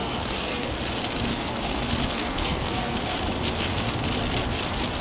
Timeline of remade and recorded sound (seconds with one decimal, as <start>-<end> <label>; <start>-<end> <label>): 0.0-0.7 remade; 0.7-1.3 recorded; 1.3-3.0 remade; 3.0-5.0 recorded